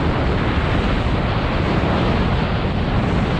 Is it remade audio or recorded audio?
recorded